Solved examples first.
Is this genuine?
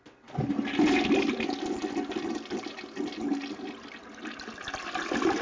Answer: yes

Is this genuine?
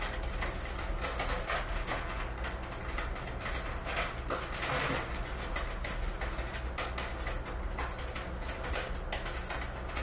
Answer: yes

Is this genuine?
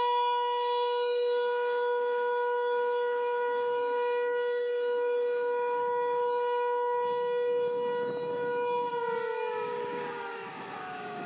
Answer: no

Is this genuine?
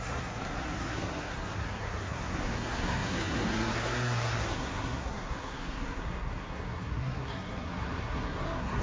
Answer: no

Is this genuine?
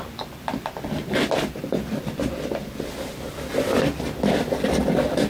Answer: yes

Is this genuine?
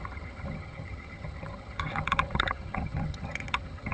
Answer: no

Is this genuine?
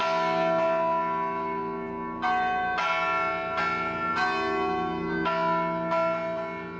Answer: yes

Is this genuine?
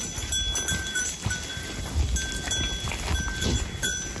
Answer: yes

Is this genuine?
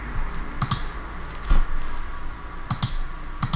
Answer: yes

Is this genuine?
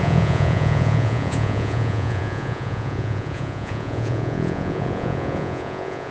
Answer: no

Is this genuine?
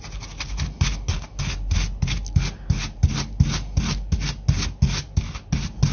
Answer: yes